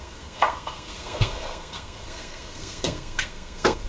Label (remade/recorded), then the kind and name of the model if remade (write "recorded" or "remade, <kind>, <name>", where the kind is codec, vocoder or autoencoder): remade, codec, SNAC